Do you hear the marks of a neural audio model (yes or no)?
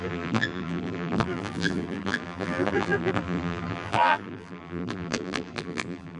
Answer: yes